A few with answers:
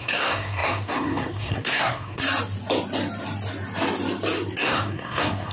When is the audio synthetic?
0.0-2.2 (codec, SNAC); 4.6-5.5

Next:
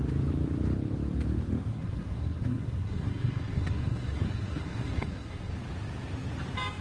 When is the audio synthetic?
1.7-5.5 (codec, SNAC)

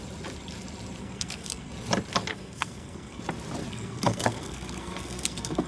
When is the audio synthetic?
1.0-1.7 (codec, SNAC); 2.3-3.2; 3.6-5.7